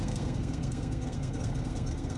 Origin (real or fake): fake